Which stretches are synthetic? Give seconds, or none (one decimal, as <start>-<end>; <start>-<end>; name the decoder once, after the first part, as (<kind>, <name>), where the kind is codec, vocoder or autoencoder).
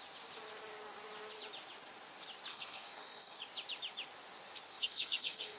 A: 2.5-3.4 (codec, SNAC); 4.7-5.6